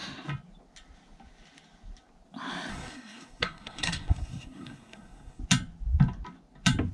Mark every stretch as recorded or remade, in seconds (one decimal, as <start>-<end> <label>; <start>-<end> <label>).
0.0-2.7 recorded; 2.7-5.4 remade; 5.4-6.9 recorded